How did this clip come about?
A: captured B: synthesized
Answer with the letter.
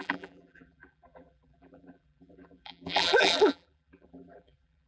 B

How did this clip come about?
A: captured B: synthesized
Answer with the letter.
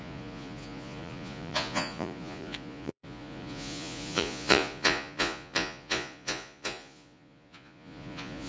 B